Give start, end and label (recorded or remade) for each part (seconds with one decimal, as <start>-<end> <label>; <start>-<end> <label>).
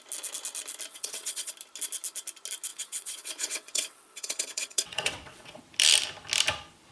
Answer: 0.0-0.9 recorded; 0.9-1.5 remade; 1.5-2.7 recorded; 2.7-5.6 remade; 5.6-6.9 recorded